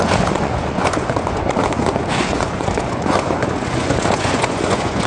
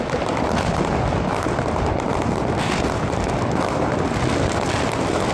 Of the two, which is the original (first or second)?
second